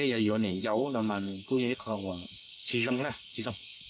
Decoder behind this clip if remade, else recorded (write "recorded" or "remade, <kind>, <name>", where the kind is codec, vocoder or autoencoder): remade, codec, SNAC